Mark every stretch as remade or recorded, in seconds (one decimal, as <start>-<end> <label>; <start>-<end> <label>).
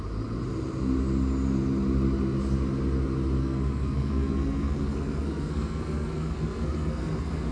0.0-3.4 recorded; 3.4-7.5 remade